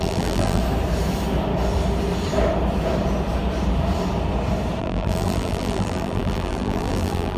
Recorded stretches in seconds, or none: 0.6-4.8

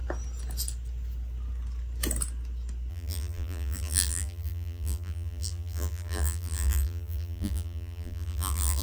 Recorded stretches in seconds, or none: 0.0-2.9

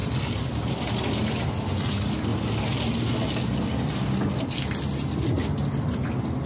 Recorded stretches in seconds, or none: 0.0-6.5